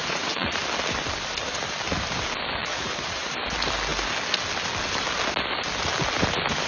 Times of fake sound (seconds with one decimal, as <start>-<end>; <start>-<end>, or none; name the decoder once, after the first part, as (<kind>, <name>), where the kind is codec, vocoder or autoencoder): 0.0-0.6 (vocoder, Vocos); 2.6-3.3